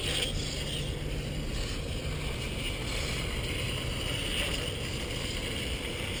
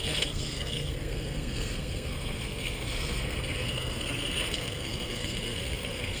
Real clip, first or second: first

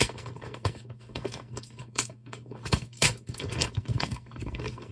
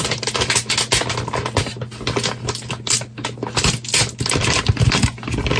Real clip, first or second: second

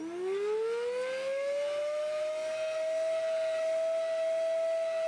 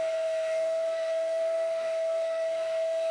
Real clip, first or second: first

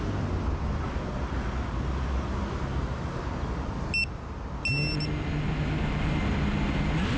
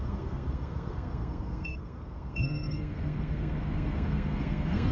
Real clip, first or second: first